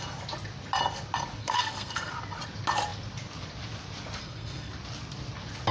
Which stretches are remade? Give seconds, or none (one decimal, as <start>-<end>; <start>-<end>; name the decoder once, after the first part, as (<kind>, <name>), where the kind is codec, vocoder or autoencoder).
1.4-2.1 (codec, SNAC); 4.2-4.7